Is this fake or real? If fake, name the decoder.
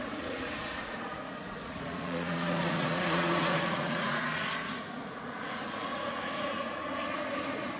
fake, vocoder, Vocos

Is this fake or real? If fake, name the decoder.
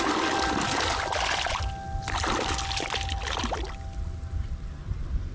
real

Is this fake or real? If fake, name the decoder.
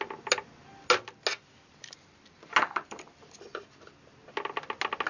real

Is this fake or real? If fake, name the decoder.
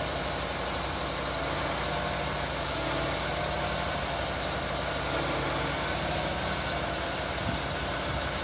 real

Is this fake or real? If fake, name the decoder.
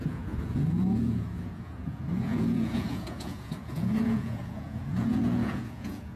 fake, vocoder, Vocos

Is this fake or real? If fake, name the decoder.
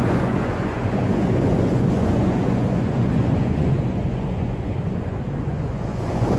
fake, vocoder, Vocos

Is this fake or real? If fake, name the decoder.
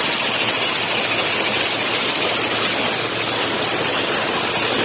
real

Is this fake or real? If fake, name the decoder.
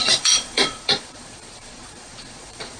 fake, vocoder, Vocos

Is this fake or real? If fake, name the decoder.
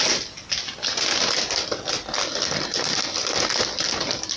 real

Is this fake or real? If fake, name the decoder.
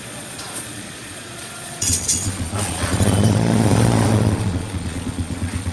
fake, vocoder, Vocos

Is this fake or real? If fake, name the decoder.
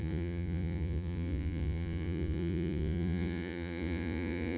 fake, vocoder, Vocos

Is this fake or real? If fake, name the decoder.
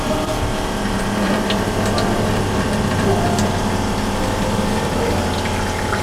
real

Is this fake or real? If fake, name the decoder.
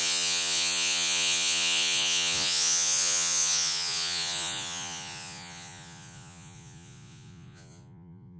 fake, vocoder, Vocos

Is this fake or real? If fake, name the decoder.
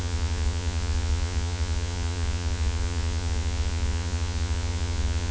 fake, vocoder, Vocos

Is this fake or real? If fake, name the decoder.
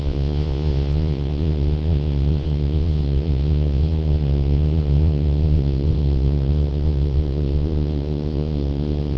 fake, vocoder, Vocos